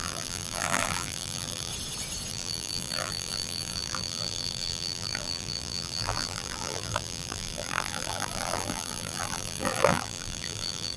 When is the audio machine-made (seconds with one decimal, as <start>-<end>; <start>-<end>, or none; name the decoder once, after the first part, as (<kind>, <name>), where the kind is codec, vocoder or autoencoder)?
0.0-1.7 (vocoder, BigVGAN v2); 2.3-11.0